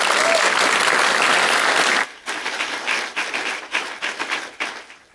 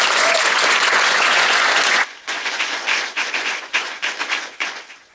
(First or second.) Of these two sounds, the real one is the first